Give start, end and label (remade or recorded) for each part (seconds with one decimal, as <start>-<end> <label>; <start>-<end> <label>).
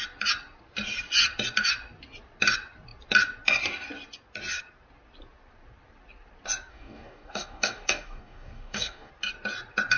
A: 0.0-6.7 recorded; 6.7-9.1 remade; 9.1-10.0 recorded